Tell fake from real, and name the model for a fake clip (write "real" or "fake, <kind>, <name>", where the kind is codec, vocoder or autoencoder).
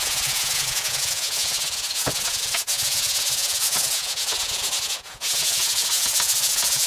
fake, vocoder, Vocos